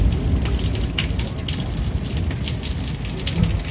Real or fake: real